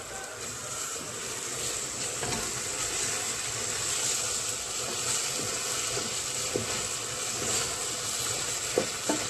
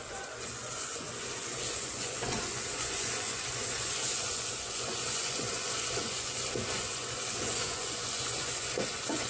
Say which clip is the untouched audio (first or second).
first